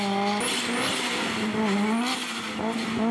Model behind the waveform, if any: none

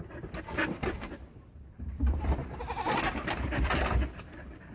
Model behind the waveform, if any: none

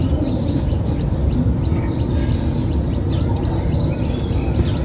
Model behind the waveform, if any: none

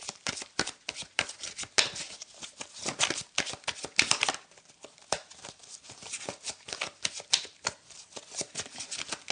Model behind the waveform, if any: none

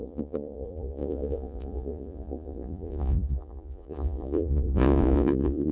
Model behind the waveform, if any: vocoder, Vocos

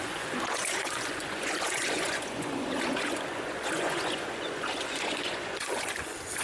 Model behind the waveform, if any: vocoder, Vocos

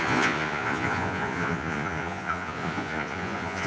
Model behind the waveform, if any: vocoder, Vocos